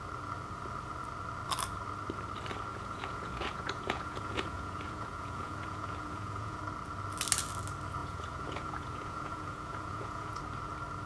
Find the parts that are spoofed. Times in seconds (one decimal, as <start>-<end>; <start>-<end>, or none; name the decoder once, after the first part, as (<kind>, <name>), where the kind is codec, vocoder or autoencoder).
2.7-6.6 (vocoder, Vocos); 8.0-10.4